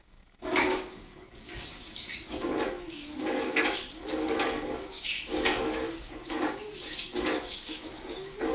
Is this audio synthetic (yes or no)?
yes